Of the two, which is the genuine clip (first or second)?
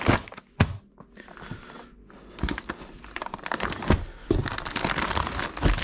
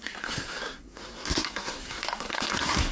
first